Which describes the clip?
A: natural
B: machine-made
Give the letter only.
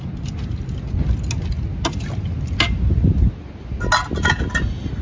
A